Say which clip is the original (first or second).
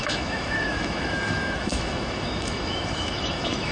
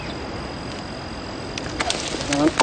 second